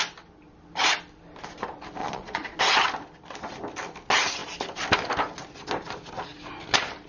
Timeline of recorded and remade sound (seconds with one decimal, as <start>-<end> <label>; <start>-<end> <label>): 0.0-2.0 recorded; 2.0-2.6 remade; 2.6-7.1 recorded